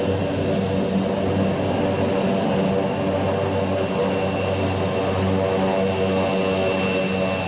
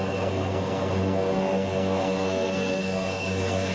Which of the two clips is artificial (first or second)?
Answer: second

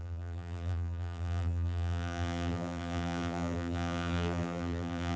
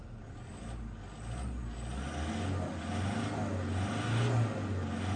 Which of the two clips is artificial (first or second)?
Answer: first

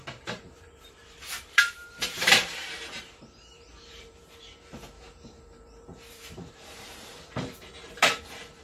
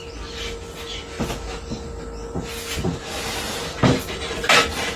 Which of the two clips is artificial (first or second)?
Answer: first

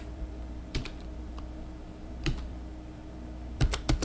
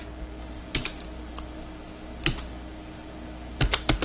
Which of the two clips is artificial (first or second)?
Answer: first